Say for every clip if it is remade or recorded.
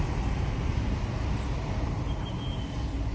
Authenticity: recorded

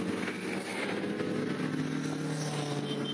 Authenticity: recorded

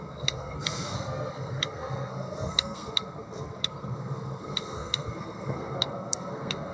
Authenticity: remade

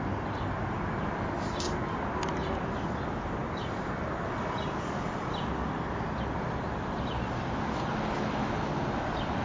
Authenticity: recorded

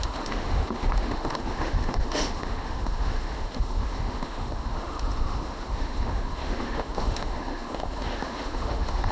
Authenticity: remade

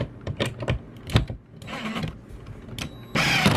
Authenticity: recorded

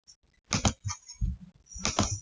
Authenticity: recorded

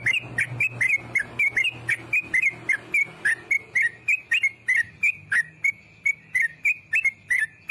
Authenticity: recorded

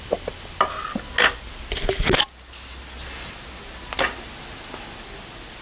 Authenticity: recorded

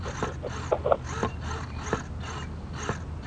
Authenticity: recorded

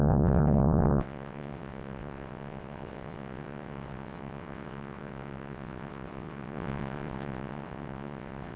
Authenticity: remade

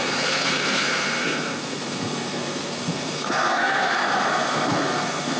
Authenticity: remade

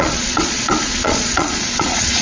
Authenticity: remade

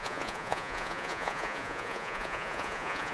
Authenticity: remade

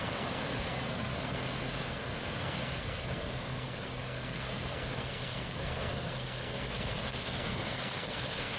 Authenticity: remade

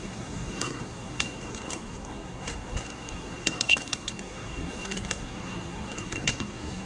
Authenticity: remade